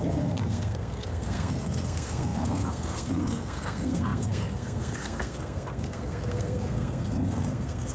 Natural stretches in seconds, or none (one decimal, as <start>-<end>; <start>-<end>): none